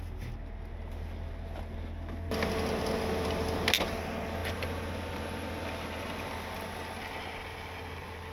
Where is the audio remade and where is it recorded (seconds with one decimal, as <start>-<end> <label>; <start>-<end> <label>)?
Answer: 0.0-8.3 recorded